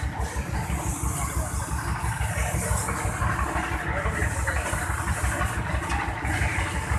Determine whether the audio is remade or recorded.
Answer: recorded